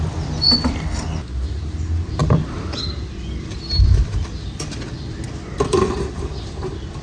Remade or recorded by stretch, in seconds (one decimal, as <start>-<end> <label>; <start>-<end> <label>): 0.0-2.2 recorded; 2.2-6.4 remade; 6.4-7.0 recorded